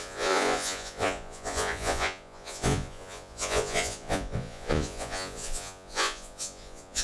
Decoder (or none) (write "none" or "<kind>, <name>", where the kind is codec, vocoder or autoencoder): vocoder, Vocos